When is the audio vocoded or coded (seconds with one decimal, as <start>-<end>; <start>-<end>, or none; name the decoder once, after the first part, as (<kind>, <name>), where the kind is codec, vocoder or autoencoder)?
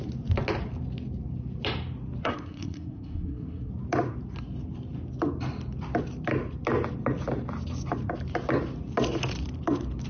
2.2-3.7 (codec, SNAC)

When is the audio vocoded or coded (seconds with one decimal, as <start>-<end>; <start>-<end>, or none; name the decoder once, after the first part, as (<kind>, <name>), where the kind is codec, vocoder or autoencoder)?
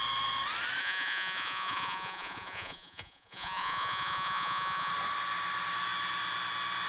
0.8-4.9 (vocoder, Vocos)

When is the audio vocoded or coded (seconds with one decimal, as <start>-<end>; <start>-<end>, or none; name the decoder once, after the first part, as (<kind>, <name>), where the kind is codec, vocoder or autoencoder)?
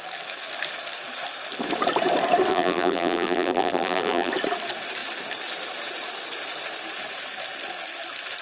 2.5-4.3 (vocoder, BigVGAN v2)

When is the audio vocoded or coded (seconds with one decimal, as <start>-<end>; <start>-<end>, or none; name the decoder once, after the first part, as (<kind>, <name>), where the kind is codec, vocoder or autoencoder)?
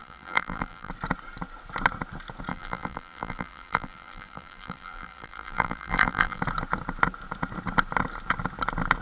0.0-0.9 (vocoder, BigVGAN v2); 2.5-6.4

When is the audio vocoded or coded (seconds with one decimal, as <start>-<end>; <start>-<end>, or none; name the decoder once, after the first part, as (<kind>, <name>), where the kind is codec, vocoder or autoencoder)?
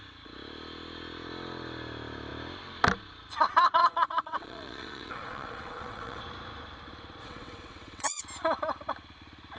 3.8-6.2 (vocoder, WaveNeXt); 7.2-8.2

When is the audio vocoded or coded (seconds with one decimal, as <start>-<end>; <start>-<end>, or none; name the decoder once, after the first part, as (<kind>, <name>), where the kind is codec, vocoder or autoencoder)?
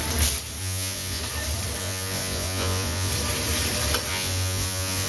0.6-1.2 (vocoder, Vocos); 1.8-3.1; 4.1-5.1